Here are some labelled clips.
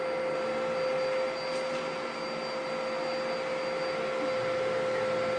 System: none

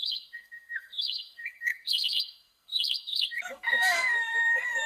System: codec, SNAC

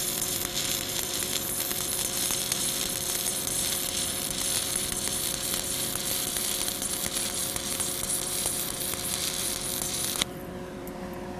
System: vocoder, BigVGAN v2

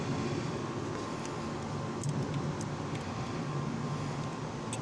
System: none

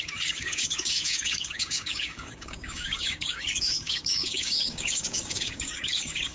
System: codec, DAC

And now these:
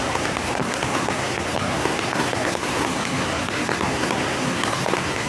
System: codec, SNAC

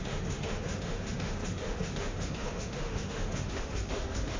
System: autoencoder, DAC-VAE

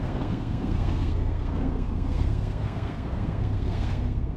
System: codec, SNAC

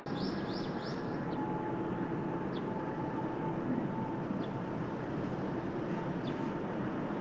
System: none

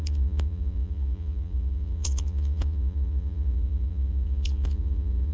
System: vocoder, Vocos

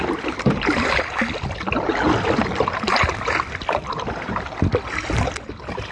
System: none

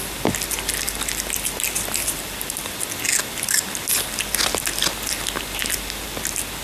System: none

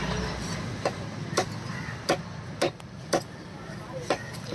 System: none